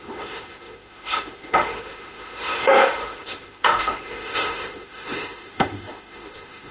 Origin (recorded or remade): remade